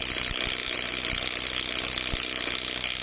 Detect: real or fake real